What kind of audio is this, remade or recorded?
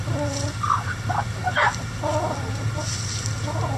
recorded